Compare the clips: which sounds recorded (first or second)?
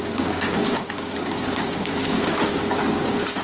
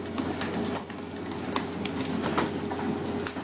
second